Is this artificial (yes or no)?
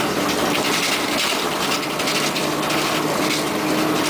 no